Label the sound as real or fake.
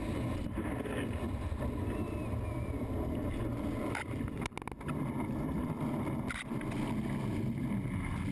real